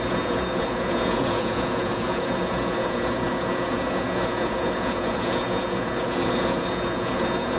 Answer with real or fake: fake